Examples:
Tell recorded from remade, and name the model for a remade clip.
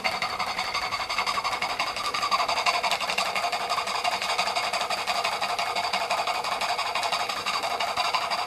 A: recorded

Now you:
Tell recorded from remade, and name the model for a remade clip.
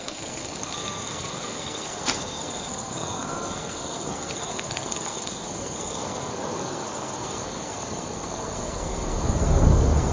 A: remade, codec, SNAC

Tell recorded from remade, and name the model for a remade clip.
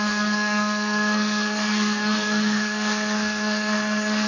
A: remade, codec, SNAC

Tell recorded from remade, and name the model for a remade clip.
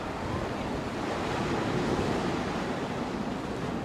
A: recorded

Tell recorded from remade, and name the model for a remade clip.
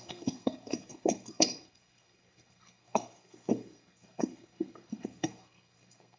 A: remade, codec, SNAC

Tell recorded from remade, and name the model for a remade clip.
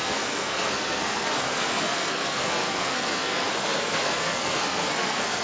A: remade, codec, SNAC